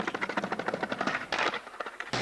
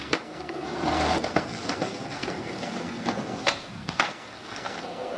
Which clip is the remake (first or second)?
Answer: second